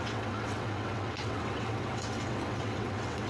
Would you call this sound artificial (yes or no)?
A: yes